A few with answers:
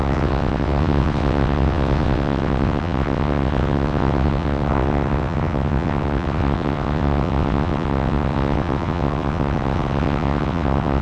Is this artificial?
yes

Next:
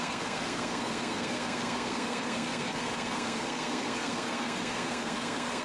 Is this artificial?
yes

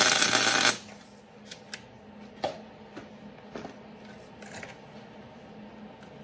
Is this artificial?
no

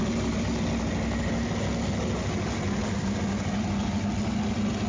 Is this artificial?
no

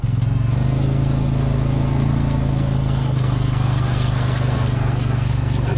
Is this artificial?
yes